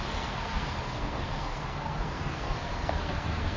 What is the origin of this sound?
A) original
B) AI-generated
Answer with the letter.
B